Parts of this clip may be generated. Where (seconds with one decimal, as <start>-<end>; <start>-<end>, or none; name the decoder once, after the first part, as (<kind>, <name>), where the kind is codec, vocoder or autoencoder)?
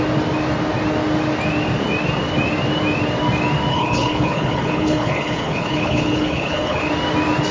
3.7-6.9 (codec, HILCodec)